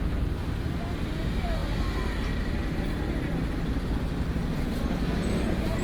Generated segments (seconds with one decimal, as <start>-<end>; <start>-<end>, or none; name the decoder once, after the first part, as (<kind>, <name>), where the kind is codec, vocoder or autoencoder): none